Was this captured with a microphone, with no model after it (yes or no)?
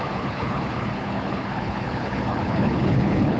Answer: no